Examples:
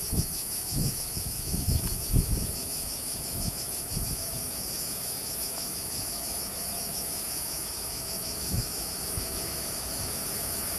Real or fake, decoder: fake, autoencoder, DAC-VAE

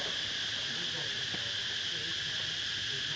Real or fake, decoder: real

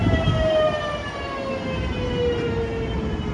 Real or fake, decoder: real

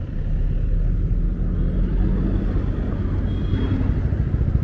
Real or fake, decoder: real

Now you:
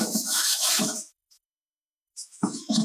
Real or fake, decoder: fake, autoencoder, DAC-VAE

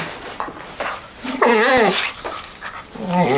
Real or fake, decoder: real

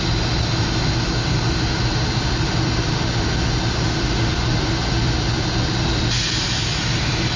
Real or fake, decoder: real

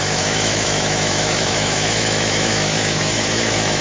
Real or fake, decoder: fake, autoencoder, DAC-VAE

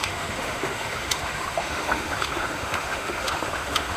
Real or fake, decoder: fake, autoencoder, DAC-VAE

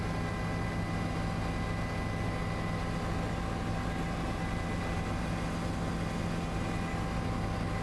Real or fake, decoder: real